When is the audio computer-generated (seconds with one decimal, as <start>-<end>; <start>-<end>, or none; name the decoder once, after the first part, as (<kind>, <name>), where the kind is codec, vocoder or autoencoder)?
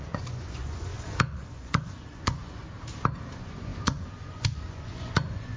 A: 0.0-2.6 (vocoder, Vocos); 3.3-5.6